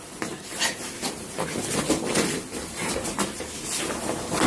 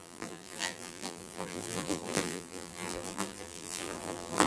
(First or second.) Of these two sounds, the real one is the first